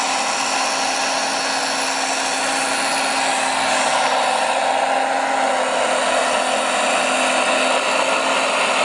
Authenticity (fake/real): real